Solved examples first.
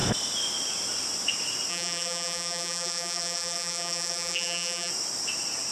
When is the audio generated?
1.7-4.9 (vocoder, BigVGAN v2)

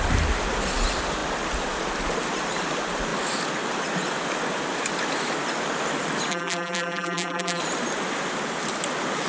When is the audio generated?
6.3-7.6 (vocoder, BigVGAN v2)

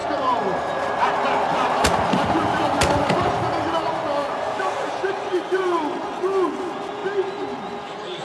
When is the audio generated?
0.0-1.1 (vocoder, BigVGAN v2); 1.5-5.8

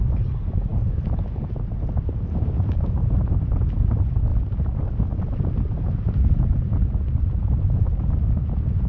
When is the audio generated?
6.7-8.0 (vocoder, BigVGAN v2)

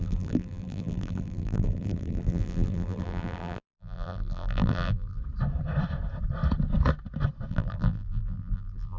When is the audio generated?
0.0-5.2 (vocoder, BigVGAN v2); 7.5-9.0